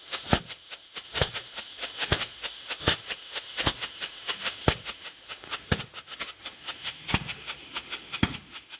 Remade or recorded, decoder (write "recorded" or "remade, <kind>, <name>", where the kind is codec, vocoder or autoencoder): remade, autoencoder, DAC-VAE